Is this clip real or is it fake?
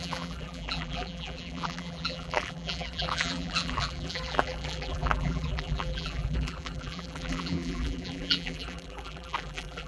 fake